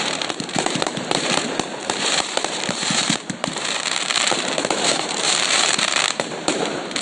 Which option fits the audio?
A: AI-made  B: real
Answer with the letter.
A